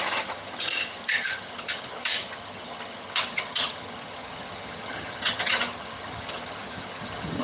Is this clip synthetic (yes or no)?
yes